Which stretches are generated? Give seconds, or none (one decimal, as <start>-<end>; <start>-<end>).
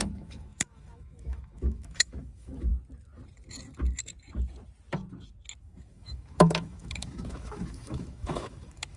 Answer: 0.0-2.7; 5.6-9.0